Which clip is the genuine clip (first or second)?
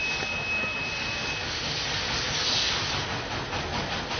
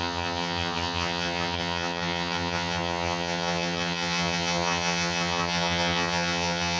first